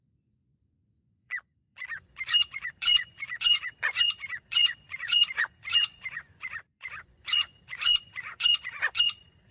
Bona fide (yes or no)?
no